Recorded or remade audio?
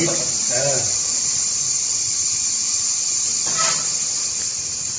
recorded